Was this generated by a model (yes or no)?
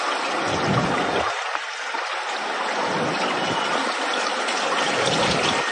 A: no